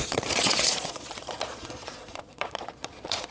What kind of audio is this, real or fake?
fake